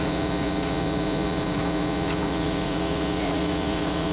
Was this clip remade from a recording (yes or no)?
yes